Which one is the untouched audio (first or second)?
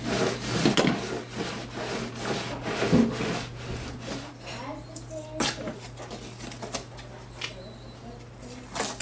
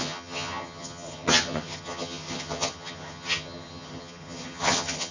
first